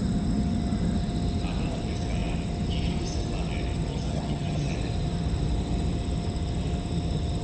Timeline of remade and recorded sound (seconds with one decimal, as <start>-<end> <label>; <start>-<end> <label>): 0.0-3.9 recorded; 3.9-4.7 remade; 4.7-7.4 recorded